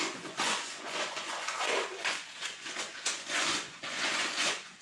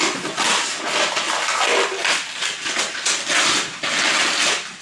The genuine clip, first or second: second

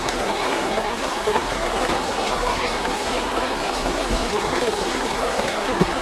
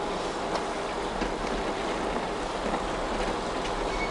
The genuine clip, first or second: second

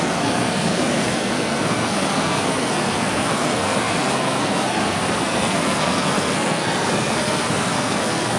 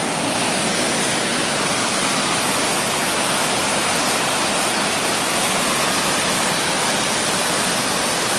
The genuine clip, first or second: second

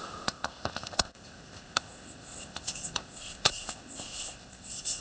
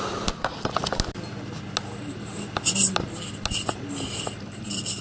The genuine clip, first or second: second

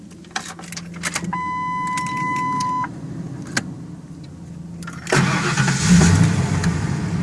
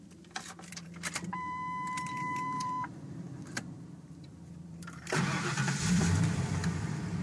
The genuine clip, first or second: first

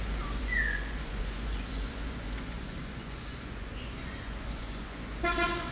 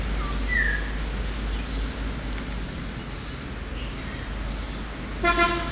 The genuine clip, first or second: second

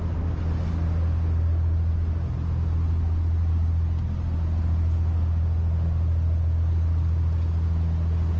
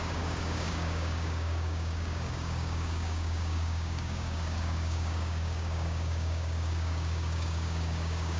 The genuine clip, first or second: first